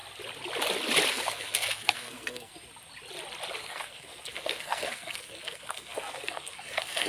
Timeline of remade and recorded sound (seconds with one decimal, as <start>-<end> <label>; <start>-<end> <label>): 0.0-1.1 recorded; 1.1-2.5 remade; 2.5-3.6 recorded; 3.6-7.1 remade